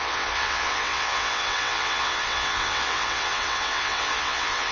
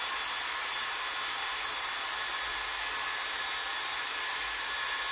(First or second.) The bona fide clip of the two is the second